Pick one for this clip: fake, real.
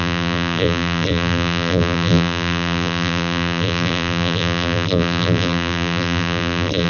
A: fake